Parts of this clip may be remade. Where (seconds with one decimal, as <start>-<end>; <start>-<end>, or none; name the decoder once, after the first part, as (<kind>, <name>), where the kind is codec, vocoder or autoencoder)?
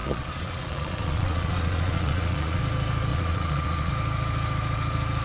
0.0-2.6 (vocoder, Vocos); 3.1-3.9